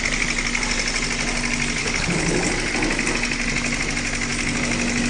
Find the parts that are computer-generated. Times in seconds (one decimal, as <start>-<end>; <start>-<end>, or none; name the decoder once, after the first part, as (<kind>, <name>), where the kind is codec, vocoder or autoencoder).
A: 1.8-2.5 (codec, HILCodec)